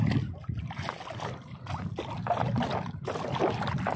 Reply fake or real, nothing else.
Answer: real